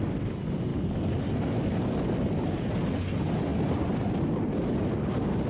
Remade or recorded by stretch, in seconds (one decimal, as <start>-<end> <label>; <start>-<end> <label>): 0.0-5.5 recorded